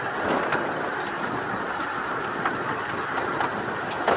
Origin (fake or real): real